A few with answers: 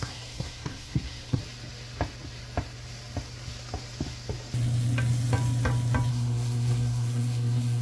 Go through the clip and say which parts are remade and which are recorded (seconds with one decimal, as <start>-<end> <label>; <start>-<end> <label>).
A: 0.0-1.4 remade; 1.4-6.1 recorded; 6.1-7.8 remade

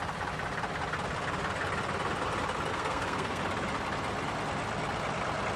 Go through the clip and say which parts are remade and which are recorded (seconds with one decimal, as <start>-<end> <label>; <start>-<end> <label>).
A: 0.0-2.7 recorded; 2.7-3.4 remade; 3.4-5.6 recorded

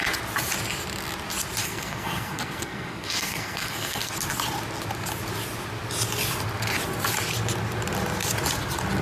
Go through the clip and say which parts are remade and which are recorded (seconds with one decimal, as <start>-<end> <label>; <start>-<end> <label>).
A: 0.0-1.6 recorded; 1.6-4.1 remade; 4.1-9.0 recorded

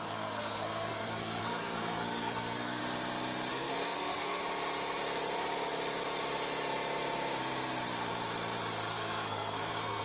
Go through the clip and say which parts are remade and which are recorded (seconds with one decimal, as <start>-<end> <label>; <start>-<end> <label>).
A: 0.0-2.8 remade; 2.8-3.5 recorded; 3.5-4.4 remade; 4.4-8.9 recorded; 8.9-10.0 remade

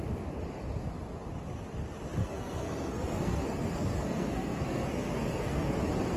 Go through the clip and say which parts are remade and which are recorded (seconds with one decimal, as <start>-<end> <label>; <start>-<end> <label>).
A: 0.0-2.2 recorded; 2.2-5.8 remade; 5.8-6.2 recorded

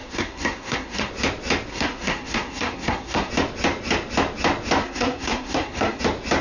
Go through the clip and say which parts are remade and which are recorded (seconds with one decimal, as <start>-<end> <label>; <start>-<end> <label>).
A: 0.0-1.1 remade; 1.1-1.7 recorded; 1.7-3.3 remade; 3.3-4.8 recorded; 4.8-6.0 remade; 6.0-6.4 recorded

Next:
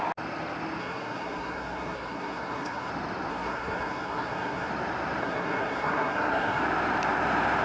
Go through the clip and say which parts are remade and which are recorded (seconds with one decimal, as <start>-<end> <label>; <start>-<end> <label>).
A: 0.0-0.8 recorded; 0.8-2.9 remade; 2.9-3.3 recorded; 3.3-4.7 remade; 4.7-5.2 recorded; 5.2-6.6 remade; 6.6-7.6 recorded

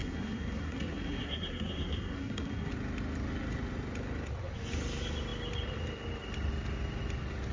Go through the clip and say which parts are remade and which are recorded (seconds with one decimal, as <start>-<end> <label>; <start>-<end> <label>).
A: 0.0-2.7 remade; 2.7-7.5 recorded